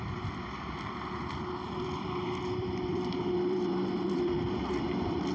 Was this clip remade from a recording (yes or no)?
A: yes